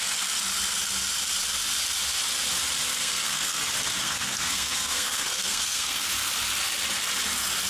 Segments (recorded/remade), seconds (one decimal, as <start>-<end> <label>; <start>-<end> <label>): 0.0-3.0 recorded; 3.0-3.6 remade; 3.6-4.0 recorded; 4.0-6.1 remade; 6.1-7.7 recorded